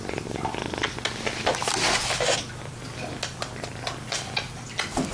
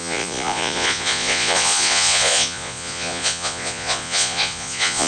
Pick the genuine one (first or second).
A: first